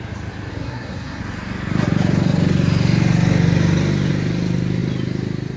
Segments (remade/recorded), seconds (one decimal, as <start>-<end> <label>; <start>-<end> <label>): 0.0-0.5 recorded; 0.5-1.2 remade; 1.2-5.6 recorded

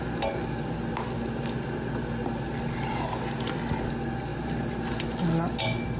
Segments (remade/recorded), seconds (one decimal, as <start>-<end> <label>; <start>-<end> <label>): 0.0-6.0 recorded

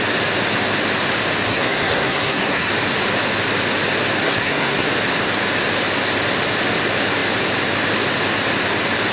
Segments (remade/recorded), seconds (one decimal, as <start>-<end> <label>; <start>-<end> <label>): 0.0-1.5 recorded; 1.5-2.7 remade; 2.7-4.2 recorded; 4.2-4.9 remade; 4.9-9.1 recorded

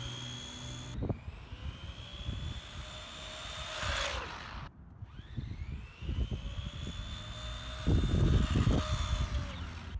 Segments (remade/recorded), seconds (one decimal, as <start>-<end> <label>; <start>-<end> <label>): 0.0-10.0 recorded